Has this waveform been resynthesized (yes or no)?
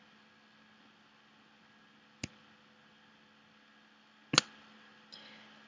no